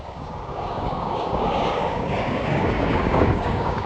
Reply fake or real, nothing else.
fake